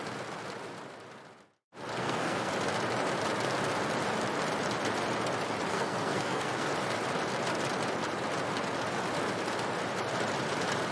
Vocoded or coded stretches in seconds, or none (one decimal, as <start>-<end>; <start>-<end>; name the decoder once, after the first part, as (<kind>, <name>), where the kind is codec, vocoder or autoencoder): 2.0-2.5 (codec, SNAC); 5.7-6.7